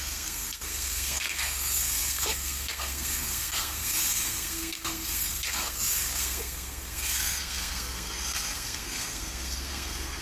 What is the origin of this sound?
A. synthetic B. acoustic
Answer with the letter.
A